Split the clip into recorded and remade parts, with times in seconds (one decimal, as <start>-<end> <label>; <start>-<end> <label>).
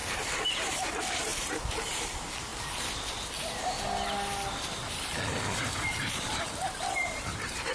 0.0-0.7 recorded; 0.7-2.5 remade; 2.5-5.9 recorded; 5.9-7.7 remade